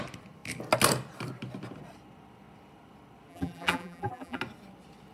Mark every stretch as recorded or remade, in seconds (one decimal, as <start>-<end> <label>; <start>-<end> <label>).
0.0-3.3 recorded; 3.3-4.4 remade; 4.4-5.1 recorded